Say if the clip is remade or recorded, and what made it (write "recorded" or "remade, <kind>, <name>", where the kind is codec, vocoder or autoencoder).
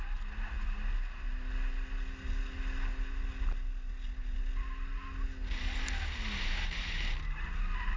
recorded